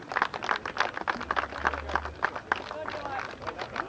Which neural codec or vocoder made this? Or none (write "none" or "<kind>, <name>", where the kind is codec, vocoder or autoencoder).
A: none